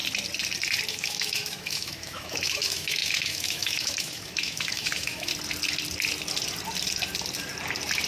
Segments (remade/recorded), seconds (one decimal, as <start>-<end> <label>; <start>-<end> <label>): 0.0-0.9 recorded; 0.9-5.3 remade; 5.3-8.1 recorded